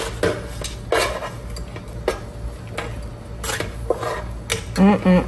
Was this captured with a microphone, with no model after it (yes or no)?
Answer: yes